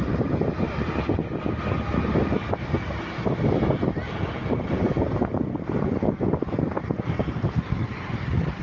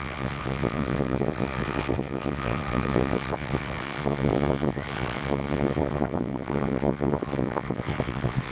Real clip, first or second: first